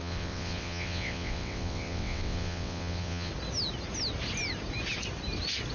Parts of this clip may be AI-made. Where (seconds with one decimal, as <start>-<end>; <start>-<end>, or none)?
0.0-3.3